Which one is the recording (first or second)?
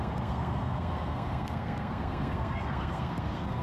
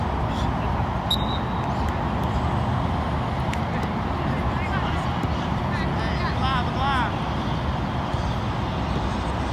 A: second